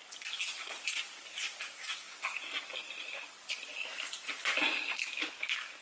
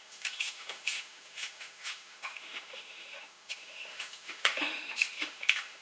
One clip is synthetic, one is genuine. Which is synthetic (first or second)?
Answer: second